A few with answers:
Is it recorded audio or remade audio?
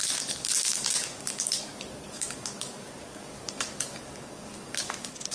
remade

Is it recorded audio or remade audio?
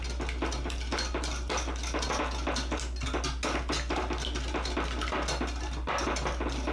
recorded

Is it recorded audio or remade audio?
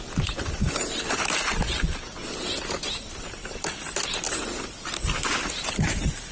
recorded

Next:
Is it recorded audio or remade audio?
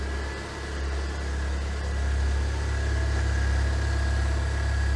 recorded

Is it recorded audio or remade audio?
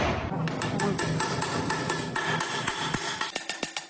recorded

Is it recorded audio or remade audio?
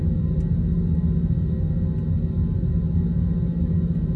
recorded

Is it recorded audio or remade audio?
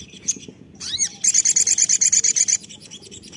recorded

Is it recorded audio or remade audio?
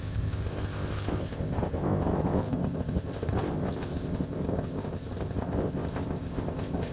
remade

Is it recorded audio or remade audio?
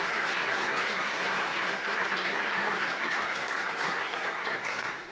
remade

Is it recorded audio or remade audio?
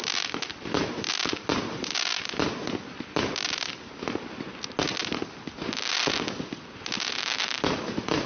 recorded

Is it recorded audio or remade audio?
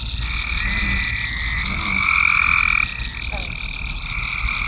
recorded